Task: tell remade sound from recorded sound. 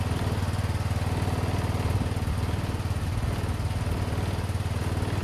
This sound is recorded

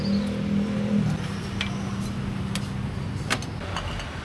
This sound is recorded